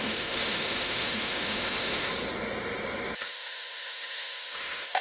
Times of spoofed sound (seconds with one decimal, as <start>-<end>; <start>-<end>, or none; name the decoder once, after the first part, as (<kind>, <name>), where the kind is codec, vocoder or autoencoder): 0.0-2.1 (autoencoder, DAC-VAE); 3.2-5.0